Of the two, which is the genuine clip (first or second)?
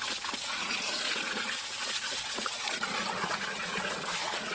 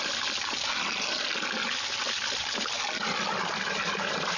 second